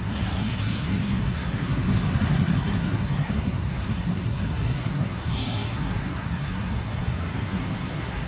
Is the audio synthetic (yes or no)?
yes